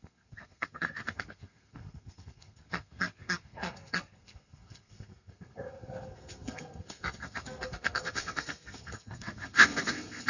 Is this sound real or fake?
fake